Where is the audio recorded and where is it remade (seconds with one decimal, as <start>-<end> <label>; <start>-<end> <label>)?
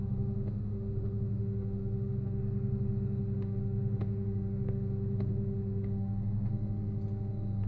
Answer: 0.0-2.4 remade; 2.4-3.2 recorded; 3.2-6.5 remade; 6.5-7.7 recorded